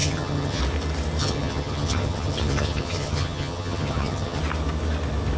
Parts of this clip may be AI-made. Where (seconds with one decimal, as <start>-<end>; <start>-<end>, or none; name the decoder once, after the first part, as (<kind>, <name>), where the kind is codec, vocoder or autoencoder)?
0.0-0.6 (vocoder, HiFi-GAN); 1.2-4.4